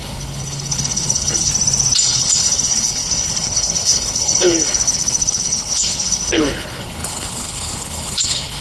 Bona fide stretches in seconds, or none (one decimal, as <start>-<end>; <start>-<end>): 1.5-2.0